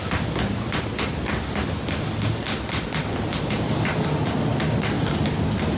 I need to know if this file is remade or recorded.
recorded